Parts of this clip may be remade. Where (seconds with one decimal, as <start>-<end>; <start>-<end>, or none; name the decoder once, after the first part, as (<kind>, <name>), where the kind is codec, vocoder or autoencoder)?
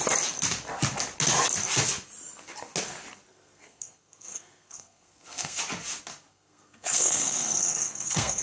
3.3-5.6 (codec, SNAC); 6.3-8.4